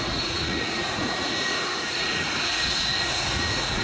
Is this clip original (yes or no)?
no